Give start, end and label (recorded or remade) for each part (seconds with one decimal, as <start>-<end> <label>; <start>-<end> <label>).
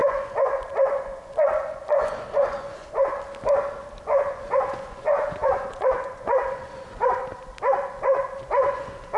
0.0-3.1 remade; 3.1-4.0 recorded; 4.0-7.3 remade; 7.3-7.9 recorded; 7.9-9.2 remade